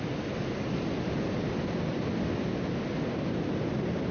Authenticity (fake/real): real